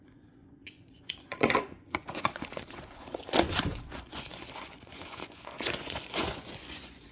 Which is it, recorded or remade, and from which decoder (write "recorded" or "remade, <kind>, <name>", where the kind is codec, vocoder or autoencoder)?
remade, vocoder, Vocos